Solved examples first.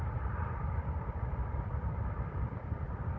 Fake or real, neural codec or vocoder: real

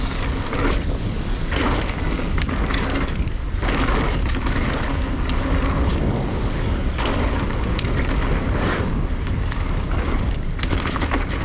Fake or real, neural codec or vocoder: fake, codec, DAC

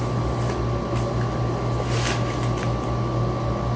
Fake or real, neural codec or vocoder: real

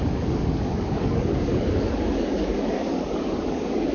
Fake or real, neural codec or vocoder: fake, codec, DAC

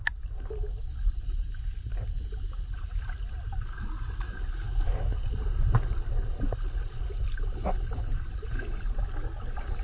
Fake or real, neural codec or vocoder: real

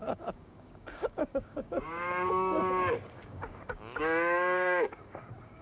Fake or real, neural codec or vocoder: fake, codec, DAC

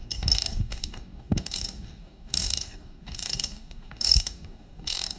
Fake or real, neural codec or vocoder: fake, codec, DAC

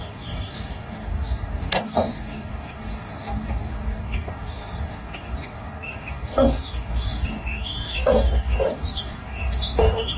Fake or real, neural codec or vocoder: fake, codec, DAC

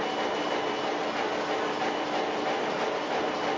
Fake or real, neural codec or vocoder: real